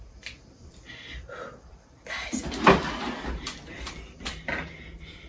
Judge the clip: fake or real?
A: fake